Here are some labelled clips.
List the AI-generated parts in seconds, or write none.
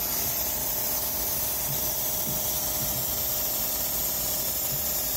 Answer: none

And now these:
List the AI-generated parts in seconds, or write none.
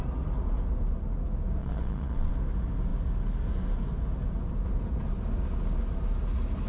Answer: 1.6-2.3 (vocoder, Vocos)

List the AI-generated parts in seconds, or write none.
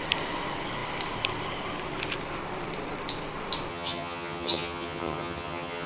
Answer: 3.7-5.9 (vocoder, HiFi-GAN)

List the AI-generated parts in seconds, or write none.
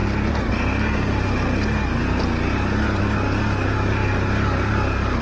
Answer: none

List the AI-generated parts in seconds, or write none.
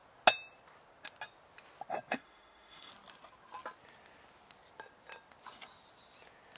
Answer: 2.1-2.9 (autoencoder, DAC-VAE)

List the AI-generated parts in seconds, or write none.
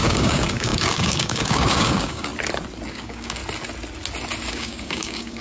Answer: 0.0-2.3 (codec, DAC); 2.9-3.4; 4.5-5.4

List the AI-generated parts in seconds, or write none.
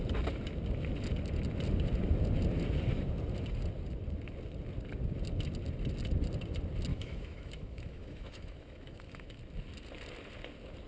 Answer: 6.9-9.4 (autoencoder, DAC-VAE)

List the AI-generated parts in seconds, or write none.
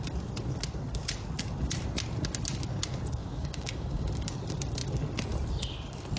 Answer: 3.2-4.0 (codec, DAC)